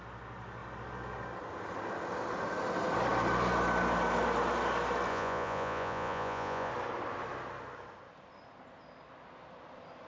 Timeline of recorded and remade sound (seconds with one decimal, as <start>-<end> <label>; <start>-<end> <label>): 0.0-5.1 recorded; 5.1-6.7 remade; 6.7-10.1 recorded

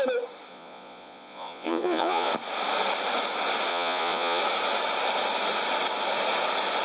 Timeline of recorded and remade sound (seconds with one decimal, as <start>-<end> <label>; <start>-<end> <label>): 0.0-0.5 recorded; 0.5-2.3 remade; 2.3-3.7 recorded; 3.7-4.4 remade; 4.4-6.8 recorded

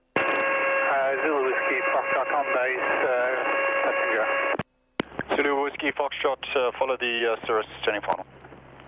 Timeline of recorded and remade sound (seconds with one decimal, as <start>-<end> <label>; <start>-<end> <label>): 0.0-8.9 recorded

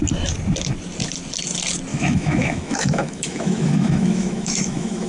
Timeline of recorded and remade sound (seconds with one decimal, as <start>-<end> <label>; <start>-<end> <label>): 0.0-1.9 recorded; 1.9-5.1 remade

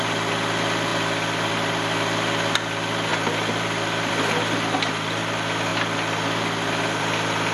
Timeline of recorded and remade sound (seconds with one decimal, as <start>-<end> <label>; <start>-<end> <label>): 0.0-3.1 recorded; 3.1-4.1 remade; 4.1-7.5 recorded

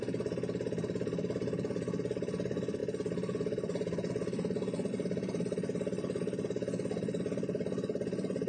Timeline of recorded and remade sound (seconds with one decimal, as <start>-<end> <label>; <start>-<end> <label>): 0.0-8.5 recorded

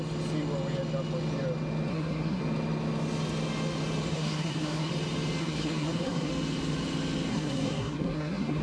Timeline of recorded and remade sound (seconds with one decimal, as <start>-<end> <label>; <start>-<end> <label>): 0.0-1.9 recorded; 1.9-2.4 remade; 2.4-4.1 recorded; 4.1-4.9 remade; 4.9-5.4 recorded; 5.4-6.3 remade; 6.3-7.3 recorded; 7.3-8.6 remade